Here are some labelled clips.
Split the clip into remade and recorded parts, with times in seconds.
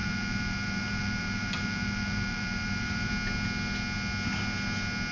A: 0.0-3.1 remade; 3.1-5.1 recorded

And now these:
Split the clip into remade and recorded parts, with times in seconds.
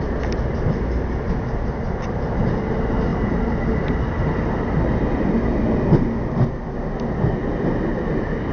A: 0.0-8.5 recorded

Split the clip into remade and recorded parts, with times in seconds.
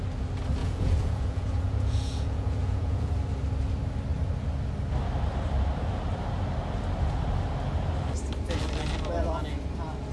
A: 0.0-0.6 recorded; 0.6-3.1 remade; 3.1-10.1 recorded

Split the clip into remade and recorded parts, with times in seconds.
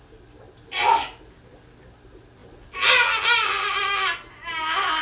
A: 0.0-5.0 recorded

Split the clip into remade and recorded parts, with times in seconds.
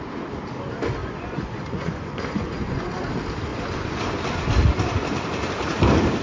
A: 0.0-1.0 recorded; 1.0-2.9 remade; 2.9-3.5 recorded; 3.5-4.0 remade; 4.0-6.2 recorded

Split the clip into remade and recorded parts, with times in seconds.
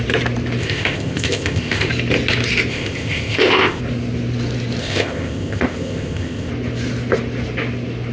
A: 0.0-0.6 recorded; 0.6-1.9 remade; 1.9-2.7 recorded; 2.7-3.8 remade; 3.8-4.8 recorded; 4.8-6.5 remade; 6.5-8.1 recorded